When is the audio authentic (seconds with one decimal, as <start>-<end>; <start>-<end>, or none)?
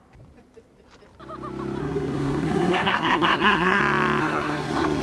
0.0-1.8; 3.8-4.2